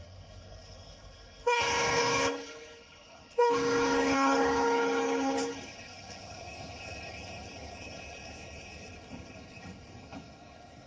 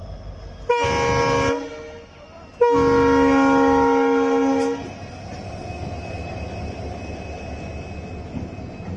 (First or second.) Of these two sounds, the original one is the second